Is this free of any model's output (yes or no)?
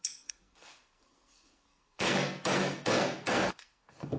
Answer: no